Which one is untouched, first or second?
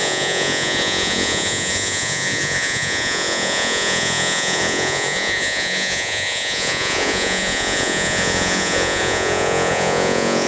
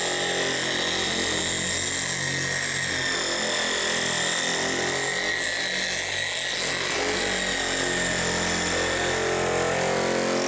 second